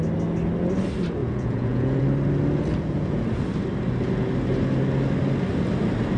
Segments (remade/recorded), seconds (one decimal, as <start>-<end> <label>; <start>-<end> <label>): 0.0-1.2 recorded; 1.2-2.0 remade; 2.0-2.7 recorded; 2.7-3.2 remade; 3.2-6.2 recorded

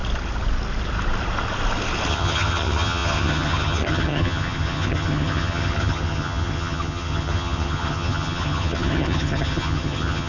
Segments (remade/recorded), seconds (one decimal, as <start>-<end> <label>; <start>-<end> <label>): 0.0-2.1 recorded; 2.1-10.3 remade

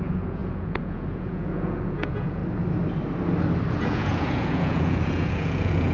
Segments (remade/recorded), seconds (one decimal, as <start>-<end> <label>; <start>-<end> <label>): 0.0-2.4 remade; 2.4-3.8 recorded; 3.8-5.9 remade